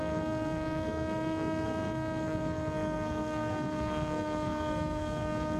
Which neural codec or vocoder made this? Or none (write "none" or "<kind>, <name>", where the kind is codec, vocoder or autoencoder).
codec, SNAC